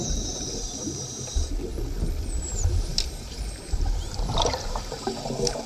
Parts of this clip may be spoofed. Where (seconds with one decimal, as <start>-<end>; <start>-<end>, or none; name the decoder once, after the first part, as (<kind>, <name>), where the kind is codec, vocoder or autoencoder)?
0.0-1.7 (vocoder, BigVGAN v2); 2.4-5.7